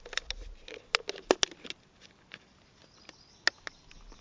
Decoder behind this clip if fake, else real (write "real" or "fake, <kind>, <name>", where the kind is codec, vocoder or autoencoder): real